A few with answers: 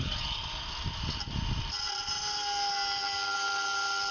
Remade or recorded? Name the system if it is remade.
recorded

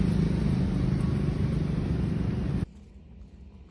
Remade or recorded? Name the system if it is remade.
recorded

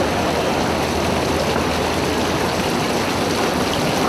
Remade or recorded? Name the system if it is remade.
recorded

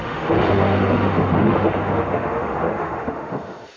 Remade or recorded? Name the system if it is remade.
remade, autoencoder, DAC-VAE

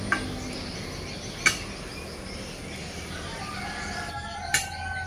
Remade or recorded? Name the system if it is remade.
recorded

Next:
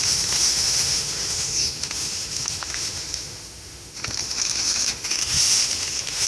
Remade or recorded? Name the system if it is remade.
remade, autoencoder, DAC-VAE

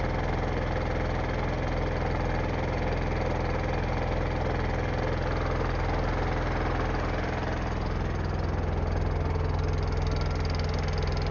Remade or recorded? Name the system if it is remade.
recorded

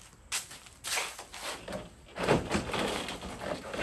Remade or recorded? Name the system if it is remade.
recorded